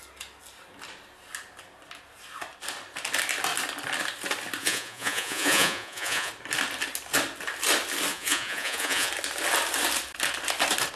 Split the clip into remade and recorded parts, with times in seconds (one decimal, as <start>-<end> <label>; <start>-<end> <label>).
0.0-4.6 recorded; 4.6-6.3 remade; 6.3-8.1 recorded; 8.1-9.1 remade; 9.1-11.0 recorded